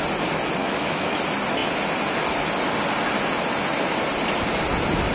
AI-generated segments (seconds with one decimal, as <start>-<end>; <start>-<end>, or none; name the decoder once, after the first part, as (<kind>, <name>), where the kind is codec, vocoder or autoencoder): 0.6-1.2 (autoencoder, DAC-VAE)